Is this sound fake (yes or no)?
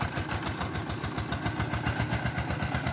no